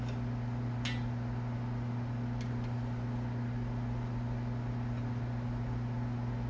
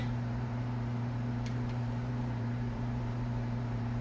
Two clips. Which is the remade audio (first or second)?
second